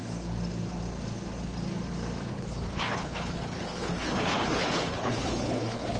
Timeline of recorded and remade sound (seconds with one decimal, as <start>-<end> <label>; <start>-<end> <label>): 0.0-2.3 recorded; 2.3-6.0 remade